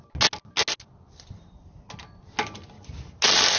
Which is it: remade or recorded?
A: recorded